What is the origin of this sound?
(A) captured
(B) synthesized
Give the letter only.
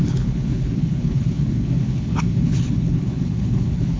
B